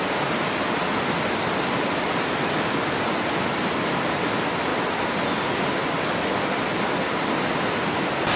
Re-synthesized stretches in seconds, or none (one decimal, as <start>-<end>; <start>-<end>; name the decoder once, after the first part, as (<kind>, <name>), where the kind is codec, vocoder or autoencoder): none